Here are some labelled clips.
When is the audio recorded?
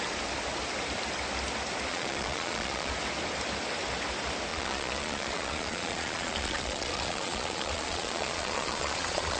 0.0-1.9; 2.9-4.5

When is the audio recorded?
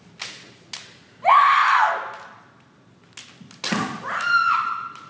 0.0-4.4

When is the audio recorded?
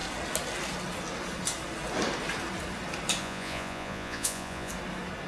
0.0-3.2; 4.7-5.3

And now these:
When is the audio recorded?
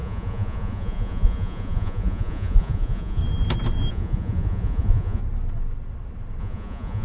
3.2-3.9; 5.2-6.4